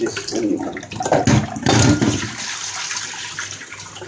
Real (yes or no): yes